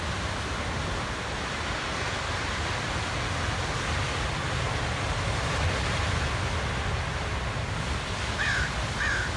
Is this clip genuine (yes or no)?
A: yes